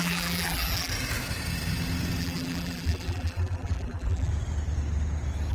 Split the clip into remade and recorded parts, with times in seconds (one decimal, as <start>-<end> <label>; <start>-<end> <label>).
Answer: 0.0-0.9 remade; 0.9-2.2 recorded; 2.2-4.3 remade; 4.3-5.5 recorded